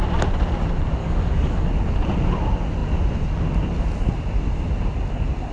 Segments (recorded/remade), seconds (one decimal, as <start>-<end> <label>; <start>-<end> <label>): 0.0-1.0 recorded; 1.0-1.7 remade; 1.7-5.5 recorded